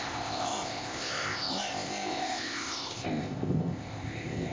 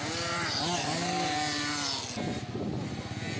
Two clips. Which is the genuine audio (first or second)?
second